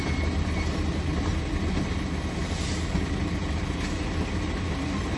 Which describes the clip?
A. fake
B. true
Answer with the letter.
B